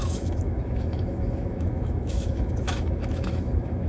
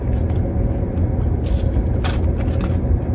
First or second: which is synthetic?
first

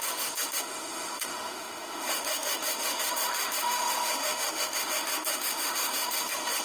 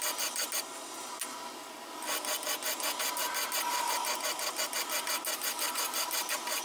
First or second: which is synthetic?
first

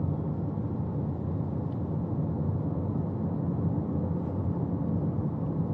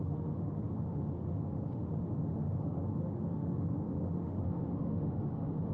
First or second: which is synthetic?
second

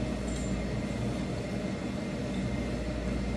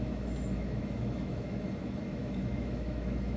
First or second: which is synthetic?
second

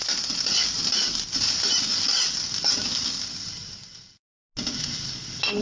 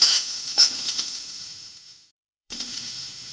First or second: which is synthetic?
second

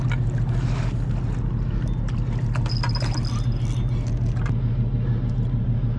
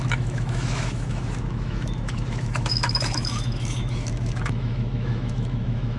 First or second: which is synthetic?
second